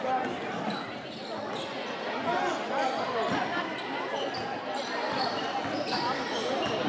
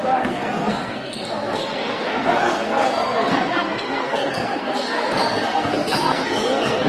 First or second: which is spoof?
second